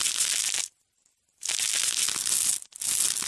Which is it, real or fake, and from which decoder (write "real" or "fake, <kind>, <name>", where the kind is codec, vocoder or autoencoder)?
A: real